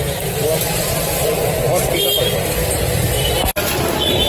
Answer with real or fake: fake